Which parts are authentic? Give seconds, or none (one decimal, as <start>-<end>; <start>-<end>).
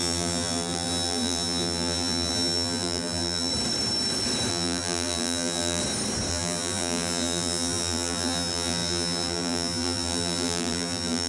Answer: 3.5-4.5; 5.8-6.3